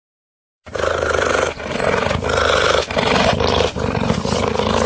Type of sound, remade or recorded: remade